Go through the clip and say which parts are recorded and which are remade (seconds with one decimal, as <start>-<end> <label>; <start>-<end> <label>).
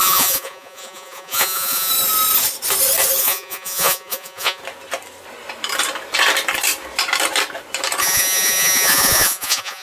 0.0-1.9 remade; 1.9-3.2 recorded; 3.2-4.6 remade; 4.6-8.0 recorded; 8.0-9.8 remade